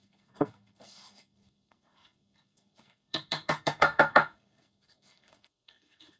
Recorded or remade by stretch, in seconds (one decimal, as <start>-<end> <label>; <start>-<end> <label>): 0.0-6.2 remade